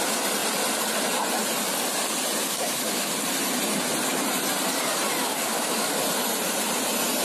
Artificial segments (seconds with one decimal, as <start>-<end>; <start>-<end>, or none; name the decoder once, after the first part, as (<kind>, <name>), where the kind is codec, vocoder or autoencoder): 2.4-3.1 (codec, DAC); 5.2-5.9